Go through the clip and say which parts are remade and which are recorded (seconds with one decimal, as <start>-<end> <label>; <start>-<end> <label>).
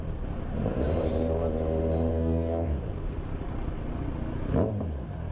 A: 0.0-2.1 recorded; 2.1-2.8 remade; 2.8-5.3 recorded